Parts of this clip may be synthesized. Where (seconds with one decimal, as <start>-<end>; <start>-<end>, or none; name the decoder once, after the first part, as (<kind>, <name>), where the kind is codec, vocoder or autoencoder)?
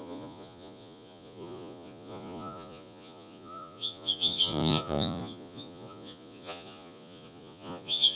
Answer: 0.0-8.2 (vocoder, Vocos)